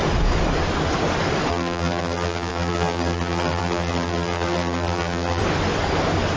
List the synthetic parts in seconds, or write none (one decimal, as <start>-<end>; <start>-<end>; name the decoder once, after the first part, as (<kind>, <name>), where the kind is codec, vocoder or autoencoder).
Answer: 1.5-5.4 (vocoder, BigVGAN v2)